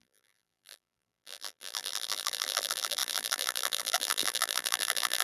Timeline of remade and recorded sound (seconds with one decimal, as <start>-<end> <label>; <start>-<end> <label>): 0.0-5.2 remade